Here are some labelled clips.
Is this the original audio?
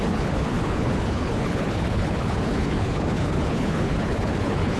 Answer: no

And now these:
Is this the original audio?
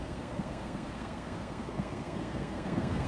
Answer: no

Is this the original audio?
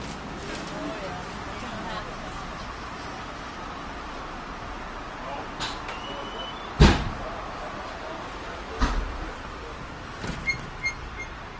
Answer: yes